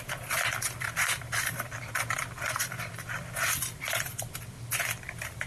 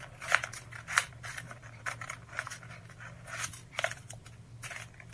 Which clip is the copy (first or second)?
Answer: first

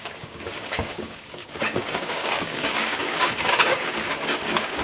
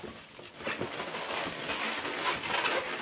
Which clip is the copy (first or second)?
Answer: first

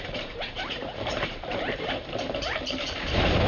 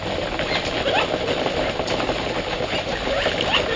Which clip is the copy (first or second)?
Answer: first